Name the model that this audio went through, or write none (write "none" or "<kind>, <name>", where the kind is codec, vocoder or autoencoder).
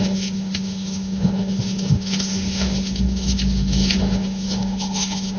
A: autoencoder, DAC-VAE